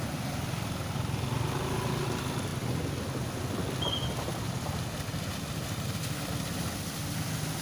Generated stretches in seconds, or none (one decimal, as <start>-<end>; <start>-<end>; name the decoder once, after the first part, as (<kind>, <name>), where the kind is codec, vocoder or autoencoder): none